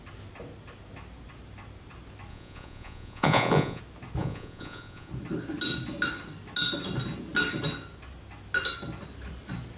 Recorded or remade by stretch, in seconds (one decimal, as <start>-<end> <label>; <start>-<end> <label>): 0.0-2.3 recorded; 2.3-3.8 remade; 3.8-4.2 recorded; 4.2-5.1 remade; 5.1-9.8 recorded